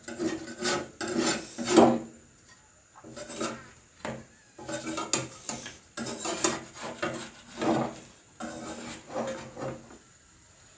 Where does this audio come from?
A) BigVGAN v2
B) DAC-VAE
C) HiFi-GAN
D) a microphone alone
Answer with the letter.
D